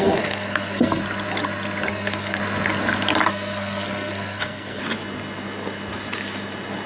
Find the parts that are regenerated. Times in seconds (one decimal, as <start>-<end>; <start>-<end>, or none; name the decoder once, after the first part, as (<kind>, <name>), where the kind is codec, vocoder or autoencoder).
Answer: 0.0-1.0 (codec, SNAC); 1.9-2.4; 3.2-4.8